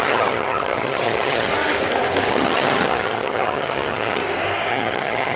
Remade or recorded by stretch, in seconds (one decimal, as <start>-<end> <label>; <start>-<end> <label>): 0.0-1.5 remade; 1.5-2.3 recorded; 2.3-4.2 remade; 4.2-4.7 recorded; 4.7-5.4 remade